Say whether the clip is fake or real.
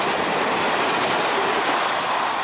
real